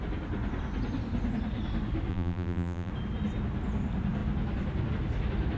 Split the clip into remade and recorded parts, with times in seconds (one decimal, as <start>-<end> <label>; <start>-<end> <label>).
0.0-2.1 recorded; 2.1-2.9 remade; 2.9-5.6 recorded